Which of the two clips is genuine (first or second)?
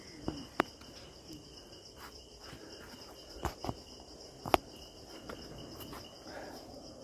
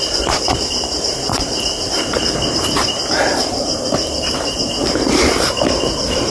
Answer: first